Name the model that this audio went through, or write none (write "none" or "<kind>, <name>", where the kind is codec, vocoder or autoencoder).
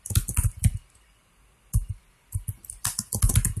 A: none